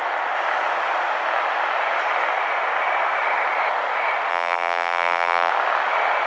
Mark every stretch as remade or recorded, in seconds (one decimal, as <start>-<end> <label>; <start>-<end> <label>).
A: 0.0-4.3 recorded; 4.3-5.5 remade; 5.5-6.3 recorded